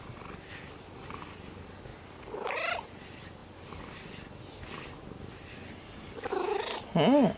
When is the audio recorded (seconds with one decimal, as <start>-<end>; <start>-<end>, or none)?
0.0-7.4